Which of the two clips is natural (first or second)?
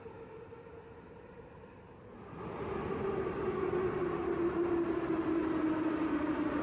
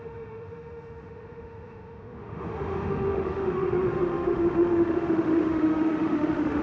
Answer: first